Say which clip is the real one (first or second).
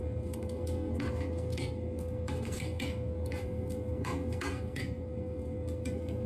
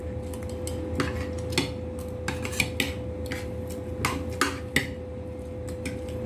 second